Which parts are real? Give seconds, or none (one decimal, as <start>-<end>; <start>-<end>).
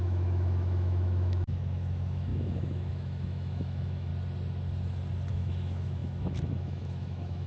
4.1-5.3